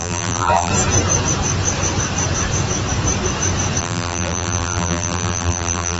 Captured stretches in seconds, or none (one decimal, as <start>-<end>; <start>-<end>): 0.7-3.8